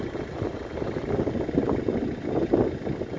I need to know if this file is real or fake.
real